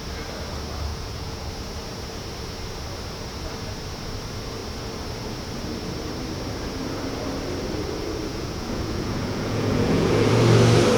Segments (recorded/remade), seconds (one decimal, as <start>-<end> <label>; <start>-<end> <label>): 0.0-0.9 recorded; 0.9-1.5 remade; 1.5-8.3 recorded; 8.3-10.3 remade; 10.3-11.0 recorded